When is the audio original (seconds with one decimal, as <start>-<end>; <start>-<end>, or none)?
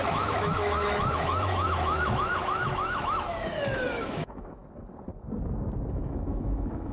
4.6-5.9